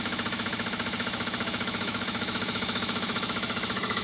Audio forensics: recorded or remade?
remade